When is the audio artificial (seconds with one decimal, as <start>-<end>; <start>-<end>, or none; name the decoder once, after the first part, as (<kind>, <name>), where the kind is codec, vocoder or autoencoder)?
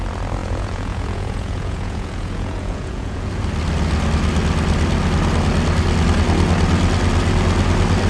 0.4-3.3 (vocoder, Vocos)